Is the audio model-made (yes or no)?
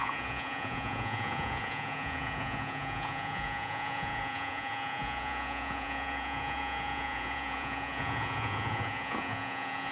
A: yes